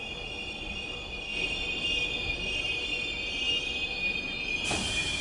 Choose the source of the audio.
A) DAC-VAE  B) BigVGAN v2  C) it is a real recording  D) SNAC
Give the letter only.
C